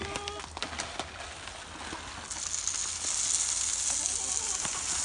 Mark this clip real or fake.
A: real